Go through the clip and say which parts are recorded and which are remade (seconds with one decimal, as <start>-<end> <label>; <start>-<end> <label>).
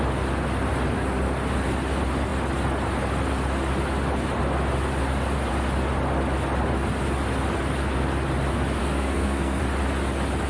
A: 0.0-8.8 recorded; 8.8-9.6 remade; 9.6-10.5 recorded